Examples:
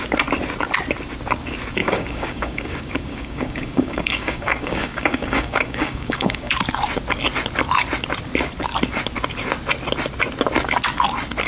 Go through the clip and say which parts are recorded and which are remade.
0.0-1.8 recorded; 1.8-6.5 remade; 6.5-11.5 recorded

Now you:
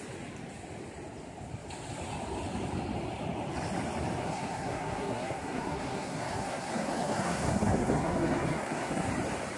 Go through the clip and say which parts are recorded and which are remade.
0.0-4.2 recorded; 4.2-9.1 remade; 9.1-9.6 recorded

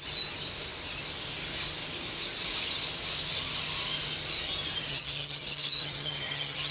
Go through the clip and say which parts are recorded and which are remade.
0.0-4.9 recorded; 4.9-6.7 remade

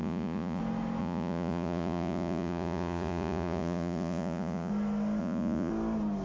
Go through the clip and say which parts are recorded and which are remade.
0.0-0.6 remade; 0.6-1.0 recorded; 1.0-4.7 remade; 4.7-5.2 recorded; 5.2-5.7 remade; 5.7-6.2 recorded

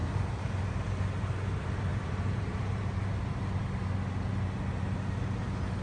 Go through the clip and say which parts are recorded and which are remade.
0.0-0.6 remade; 0.6-1.9 recorded; 1.9-3.2 remade; 3.2-5.8 recorded

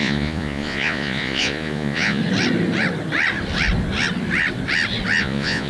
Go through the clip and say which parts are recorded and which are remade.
0.0-2.2 remade; 2.2-5.2 recorded; 5.2-5.7 remade